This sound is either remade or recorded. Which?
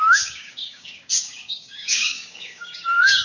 remade